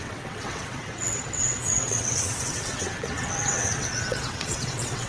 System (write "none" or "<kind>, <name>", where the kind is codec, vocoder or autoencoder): vocoder, WaveNeXt